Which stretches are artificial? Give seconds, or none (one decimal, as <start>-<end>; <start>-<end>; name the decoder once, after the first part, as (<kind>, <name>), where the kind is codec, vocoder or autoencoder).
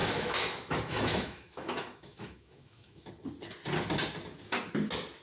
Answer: 0.0-3.1 (autoencoder, DAC-VAE)